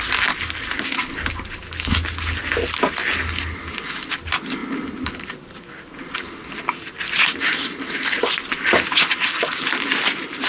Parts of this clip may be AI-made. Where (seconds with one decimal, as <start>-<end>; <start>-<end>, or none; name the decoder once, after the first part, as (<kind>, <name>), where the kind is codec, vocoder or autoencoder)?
none